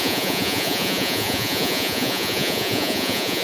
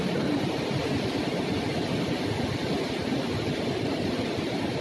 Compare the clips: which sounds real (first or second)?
second